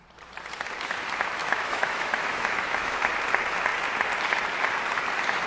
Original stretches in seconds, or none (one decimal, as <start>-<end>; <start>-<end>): 0.0-1.4; 3.1-5.5